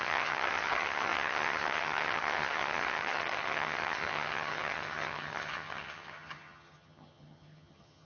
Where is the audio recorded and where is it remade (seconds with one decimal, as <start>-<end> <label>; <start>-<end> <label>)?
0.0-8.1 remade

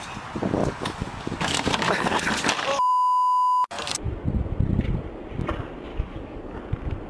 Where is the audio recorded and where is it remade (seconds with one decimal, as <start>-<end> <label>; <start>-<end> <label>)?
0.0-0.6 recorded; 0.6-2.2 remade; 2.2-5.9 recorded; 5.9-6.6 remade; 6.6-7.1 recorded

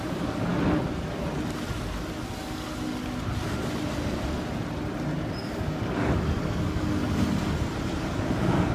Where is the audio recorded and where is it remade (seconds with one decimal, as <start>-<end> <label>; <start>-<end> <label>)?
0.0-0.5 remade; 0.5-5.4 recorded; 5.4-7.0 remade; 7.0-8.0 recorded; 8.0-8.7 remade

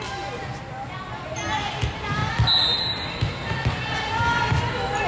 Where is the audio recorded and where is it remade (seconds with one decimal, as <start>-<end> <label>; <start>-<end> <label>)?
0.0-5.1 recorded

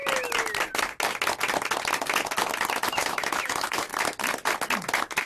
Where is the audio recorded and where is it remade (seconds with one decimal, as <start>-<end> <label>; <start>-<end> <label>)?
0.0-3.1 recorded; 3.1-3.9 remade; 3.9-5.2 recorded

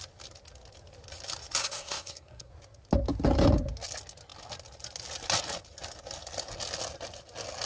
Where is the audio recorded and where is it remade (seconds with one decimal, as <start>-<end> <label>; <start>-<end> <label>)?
0.0-1.6 recorded; 1.6-2.5 remade; 2.5-7.7 recorded